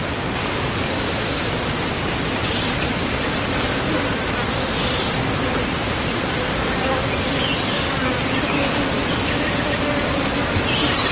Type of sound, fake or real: real